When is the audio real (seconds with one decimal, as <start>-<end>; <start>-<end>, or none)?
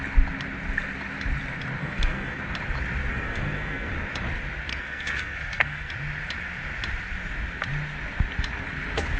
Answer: 0.0-1.8; 2.4-3.1; 3.9-4.7; 5.9-9.2